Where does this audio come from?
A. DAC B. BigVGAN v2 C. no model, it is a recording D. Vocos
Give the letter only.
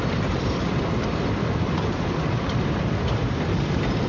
B